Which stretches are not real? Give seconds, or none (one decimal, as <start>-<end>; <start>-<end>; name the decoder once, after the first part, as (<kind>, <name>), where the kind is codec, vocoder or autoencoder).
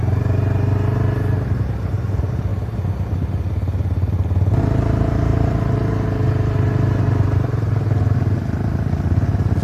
none